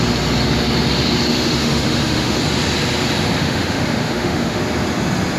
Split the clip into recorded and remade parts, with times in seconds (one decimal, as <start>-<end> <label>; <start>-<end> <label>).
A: 0.0-1.3 recorded; 1.3-2.4 remade; 2.4-3.4 recorded; 3.4-4.6 remade; 4.6-5.4 recorded